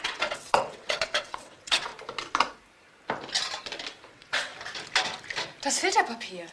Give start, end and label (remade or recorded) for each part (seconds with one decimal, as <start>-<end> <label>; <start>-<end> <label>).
0.0-1.9 remade; 1.9-4.1 recorded; 4.1-4.5 remade; 4.5-6.5 recorded